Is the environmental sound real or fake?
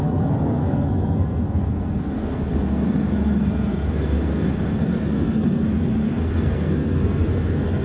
fake